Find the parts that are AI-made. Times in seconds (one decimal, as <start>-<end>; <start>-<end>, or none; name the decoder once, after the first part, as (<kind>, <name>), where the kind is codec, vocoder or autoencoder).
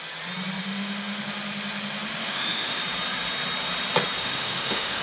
0.6-1.2 (autoencoder, DAC-VAE); 2.2-2.8; 4.2-5.0